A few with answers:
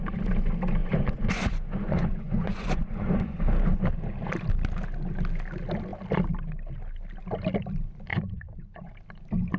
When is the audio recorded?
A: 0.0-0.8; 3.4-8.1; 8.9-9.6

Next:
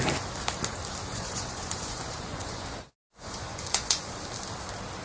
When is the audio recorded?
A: 0.0-1.1; 4.1-5.0